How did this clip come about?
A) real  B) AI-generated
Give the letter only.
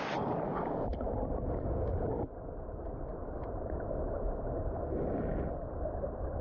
B